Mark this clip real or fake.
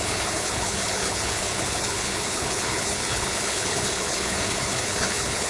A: fake